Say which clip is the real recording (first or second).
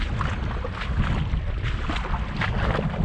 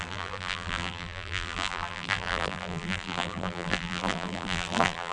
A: first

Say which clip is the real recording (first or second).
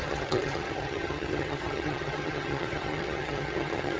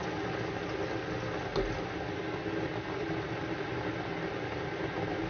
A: second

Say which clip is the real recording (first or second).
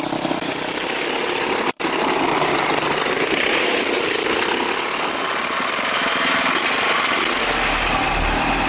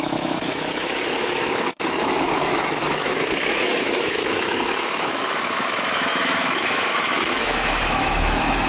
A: first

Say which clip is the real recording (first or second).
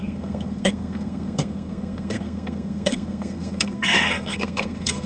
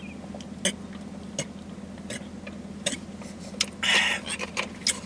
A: second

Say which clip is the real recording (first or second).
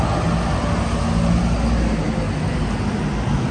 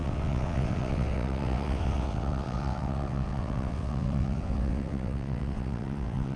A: first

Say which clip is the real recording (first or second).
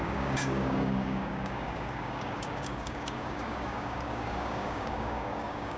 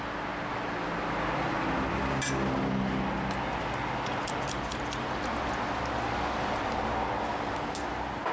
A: second